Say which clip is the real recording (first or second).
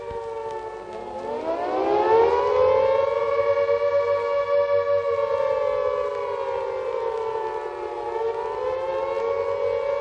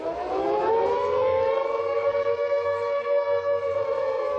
first